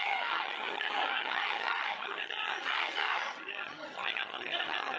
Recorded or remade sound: remade